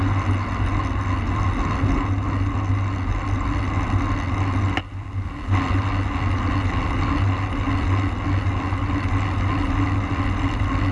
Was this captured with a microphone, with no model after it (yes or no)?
yes